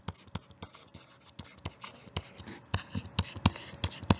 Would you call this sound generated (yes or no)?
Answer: no